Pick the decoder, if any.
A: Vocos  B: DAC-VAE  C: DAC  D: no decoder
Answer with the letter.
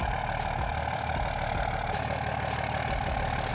D